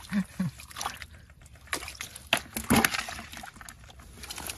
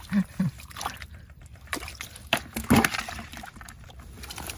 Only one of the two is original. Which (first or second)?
first